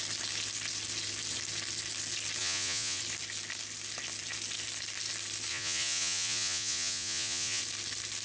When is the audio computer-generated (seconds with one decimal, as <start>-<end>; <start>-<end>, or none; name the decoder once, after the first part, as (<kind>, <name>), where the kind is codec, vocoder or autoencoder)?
2.4-3.0 (vocoder, Vocos); 5.5-7.6